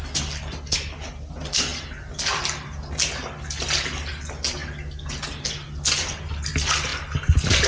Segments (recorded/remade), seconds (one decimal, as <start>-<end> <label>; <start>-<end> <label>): 0.0-7.7 recorded